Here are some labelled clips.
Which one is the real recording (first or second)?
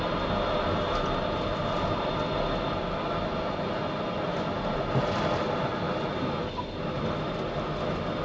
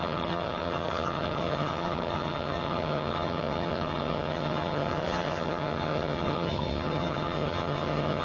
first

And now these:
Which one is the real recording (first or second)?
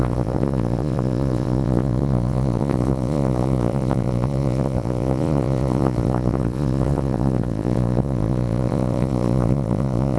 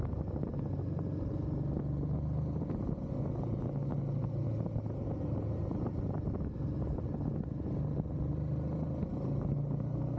second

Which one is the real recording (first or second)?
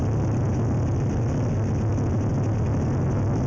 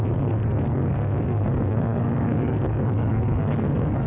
first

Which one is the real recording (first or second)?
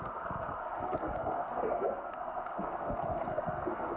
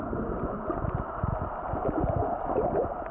second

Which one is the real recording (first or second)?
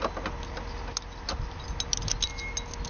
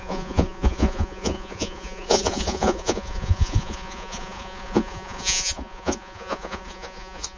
first